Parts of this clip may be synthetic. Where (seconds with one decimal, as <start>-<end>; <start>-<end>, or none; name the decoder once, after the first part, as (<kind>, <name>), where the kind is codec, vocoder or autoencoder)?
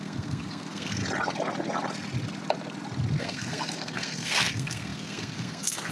0.0-1.0 (codec, SNAC); 3.2-5.9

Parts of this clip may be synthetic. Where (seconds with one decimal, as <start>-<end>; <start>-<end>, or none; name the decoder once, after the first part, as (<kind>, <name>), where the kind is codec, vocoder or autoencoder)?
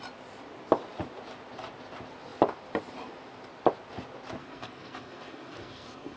4.4-6.2 (codec, SNAC)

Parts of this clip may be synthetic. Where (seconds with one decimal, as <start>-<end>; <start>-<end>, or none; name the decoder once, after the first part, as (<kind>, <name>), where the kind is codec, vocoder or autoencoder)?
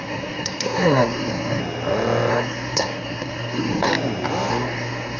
0.0-1.6 (codec, SNAC); 2.3-3.9; 4.5-5.2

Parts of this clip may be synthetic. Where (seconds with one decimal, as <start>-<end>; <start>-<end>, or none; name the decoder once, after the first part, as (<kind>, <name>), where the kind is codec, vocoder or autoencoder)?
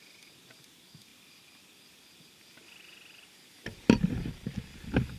none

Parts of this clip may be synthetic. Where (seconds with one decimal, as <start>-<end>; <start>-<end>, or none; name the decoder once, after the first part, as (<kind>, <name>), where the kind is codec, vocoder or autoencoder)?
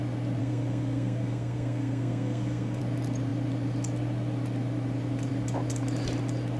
0.4-2.8 (codec, SNAC)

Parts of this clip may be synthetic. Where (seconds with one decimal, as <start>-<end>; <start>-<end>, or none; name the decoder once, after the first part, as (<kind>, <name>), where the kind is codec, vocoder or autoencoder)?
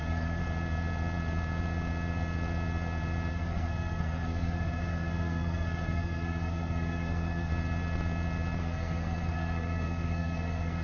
0.0-0.4 (codec, SNAC); 3.3-7.5; 8.6-10.8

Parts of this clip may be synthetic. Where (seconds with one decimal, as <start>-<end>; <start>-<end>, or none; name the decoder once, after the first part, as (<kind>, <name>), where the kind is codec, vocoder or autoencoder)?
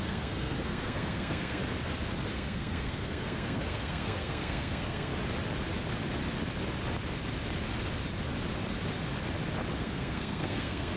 0.0-1.6 (codec, SNAC); 2.3-5.1; 9.8-11.0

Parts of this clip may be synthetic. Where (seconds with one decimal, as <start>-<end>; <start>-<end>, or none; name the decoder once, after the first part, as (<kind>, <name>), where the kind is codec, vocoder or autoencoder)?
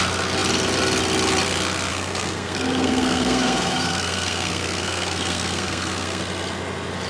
1.9-6.2 (codec, SNAC)